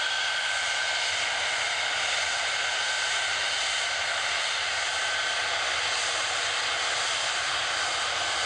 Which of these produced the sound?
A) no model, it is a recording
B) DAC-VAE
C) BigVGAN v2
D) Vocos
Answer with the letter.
A